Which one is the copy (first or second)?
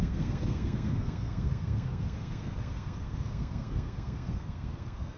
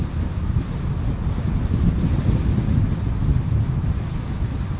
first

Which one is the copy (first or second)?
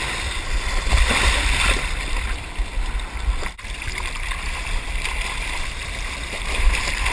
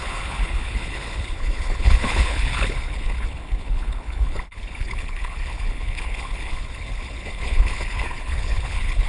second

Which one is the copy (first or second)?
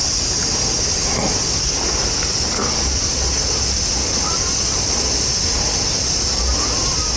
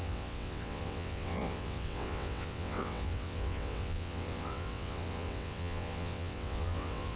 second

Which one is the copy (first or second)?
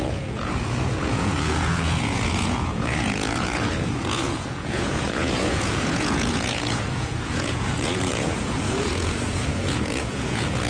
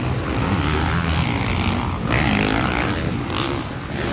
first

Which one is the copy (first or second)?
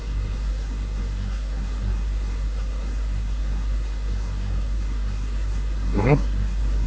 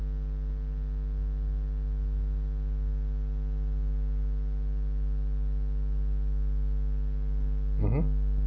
first